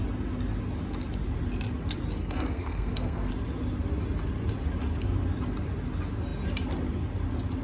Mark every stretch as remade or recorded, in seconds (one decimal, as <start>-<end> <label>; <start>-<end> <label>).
0.0-2.2 recorded; 2.2-3.3 remade; 3.3-7.6 recorded